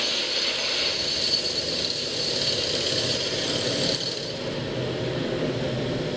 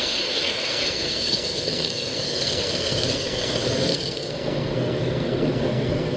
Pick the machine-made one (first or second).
second